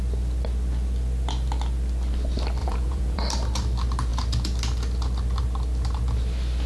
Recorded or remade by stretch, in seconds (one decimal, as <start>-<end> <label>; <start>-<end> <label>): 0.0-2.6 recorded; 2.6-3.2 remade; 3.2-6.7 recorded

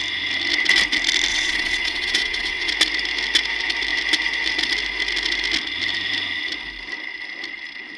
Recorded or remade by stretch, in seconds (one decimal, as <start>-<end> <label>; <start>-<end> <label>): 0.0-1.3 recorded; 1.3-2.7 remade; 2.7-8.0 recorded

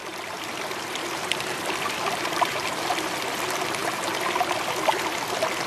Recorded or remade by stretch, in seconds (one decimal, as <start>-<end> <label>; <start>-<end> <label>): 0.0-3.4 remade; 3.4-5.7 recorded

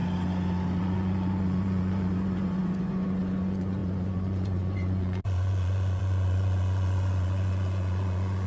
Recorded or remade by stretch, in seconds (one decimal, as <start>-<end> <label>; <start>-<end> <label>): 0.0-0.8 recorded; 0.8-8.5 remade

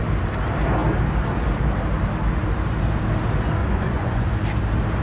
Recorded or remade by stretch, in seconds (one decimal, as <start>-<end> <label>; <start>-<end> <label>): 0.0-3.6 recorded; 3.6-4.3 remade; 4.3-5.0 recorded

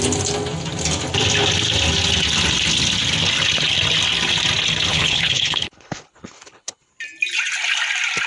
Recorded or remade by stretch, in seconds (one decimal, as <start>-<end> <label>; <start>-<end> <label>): 0.0-4.9 recorded; 4.9-6.9 remade; 6.9-8.3 recorded